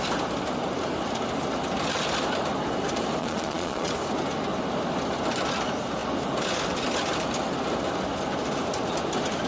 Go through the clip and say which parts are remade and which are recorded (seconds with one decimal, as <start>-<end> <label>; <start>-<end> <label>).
0.0-3.2 recorded; 3.2-3.9 remade; 3.9-9.5 recorded